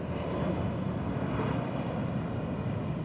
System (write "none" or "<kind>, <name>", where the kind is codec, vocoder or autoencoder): none